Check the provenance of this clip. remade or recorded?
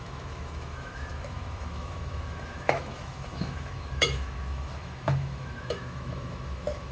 remade